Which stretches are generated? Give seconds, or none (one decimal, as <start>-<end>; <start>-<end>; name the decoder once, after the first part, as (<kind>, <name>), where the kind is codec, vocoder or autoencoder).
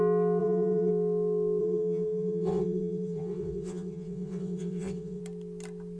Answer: 0.4-0.9 (vocoder, WaveNeXt); 1.6-5.2